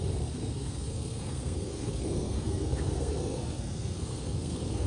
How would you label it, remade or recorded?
remade